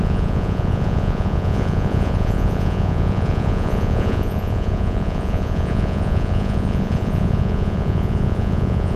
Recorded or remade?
remade